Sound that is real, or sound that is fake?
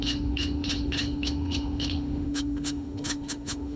fake